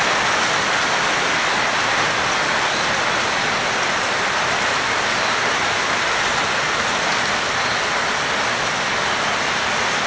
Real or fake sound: real